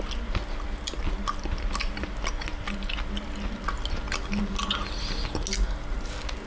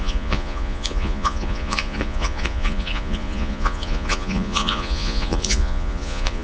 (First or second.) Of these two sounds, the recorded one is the first